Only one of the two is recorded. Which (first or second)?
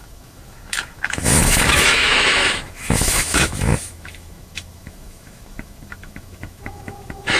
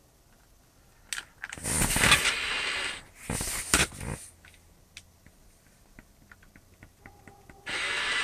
second